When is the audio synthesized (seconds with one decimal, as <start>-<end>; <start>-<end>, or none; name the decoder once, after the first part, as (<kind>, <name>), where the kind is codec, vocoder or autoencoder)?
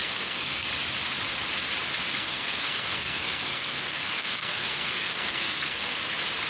0.0-0.7 (codec, SNAC); 2.1-6.0